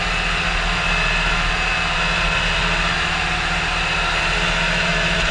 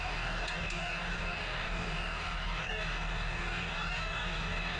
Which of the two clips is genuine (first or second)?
first